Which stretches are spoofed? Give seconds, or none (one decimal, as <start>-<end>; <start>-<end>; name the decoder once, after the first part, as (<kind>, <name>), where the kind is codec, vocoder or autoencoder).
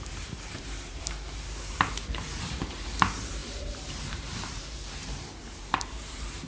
0.0-6.5 (vocoder, BigVGAN v2)